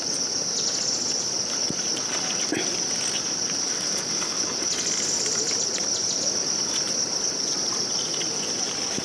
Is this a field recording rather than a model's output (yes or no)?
yes